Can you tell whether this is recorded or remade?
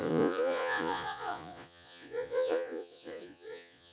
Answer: remade